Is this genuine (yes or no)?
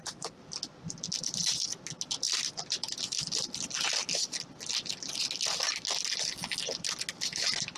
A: yes